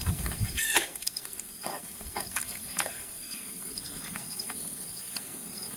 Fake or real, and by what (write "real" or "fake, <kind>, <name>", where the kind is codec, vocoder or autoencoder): fake, codec, SNAC